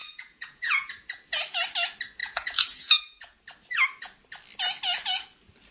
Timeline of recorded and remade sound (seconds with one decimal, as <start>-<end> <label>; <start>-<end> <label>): 0.0-0.9 remade; 0.9-2.2 recorded; 2.2-3.4 remade; 3.4-5.7 recorded